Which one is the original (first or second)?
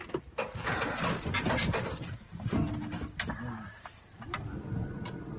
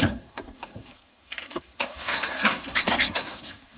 first